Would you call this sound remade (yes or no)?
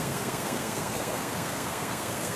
yes